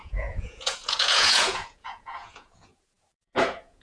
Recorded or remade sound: remade